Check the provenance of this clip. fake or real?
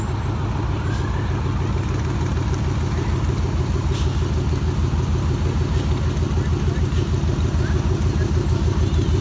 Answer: real